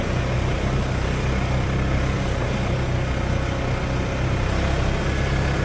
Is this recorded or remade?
recorded